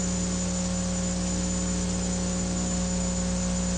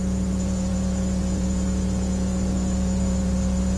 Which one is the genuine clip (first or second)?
first